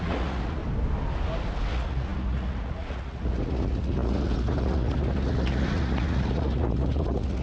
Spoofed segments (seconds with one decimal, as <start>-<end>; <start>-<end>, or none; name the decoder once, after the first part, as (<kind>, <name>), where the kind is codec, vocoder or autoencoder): 0.0-0.6 (vocoder, Vocos); 1.7-7.4